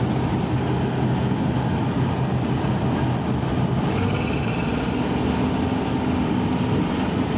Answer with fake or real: real